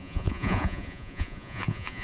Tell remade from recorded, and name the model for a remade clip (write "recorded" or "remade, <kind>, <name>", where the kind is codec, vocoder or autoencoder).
remade, vocoder, Vocos